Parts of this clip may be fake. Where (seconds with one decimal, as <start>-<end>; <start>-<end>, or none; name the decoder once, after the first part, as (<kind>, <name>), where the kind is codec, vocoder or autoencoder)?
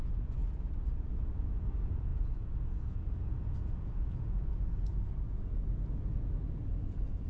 0.0-0.4 (vocoder, Vocos); 1.1-7.3